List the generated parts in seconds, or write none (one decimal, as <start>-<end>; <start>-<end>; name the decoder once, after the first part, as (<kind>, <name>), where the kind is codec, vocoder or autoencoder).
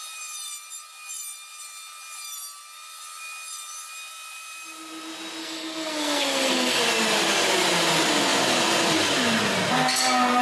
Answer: 5.4-6.8 (codec, SNAC)